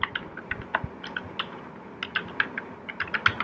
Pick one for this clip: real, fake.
real